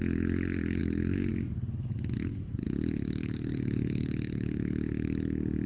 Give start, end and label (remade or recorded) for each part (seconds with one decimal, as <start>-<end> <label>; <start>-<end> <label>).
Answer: 0.0-0.8 recorded; 0.8-1.3 remade; 1.3-3.2 recorded; 3.2-4.9 remade; 4.9-5.7 recorded